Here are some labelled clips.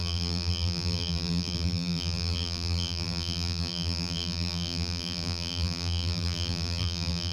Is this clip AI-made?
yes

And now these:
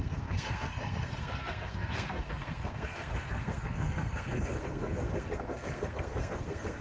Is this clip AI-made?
yes